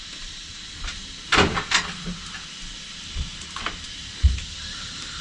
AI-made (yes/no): no